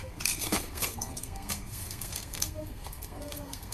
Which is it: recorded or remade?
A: remade